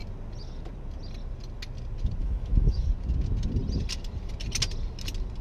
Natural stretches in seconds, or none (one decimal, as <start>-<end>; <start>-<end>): 0.0-2.2; 2.9-5.4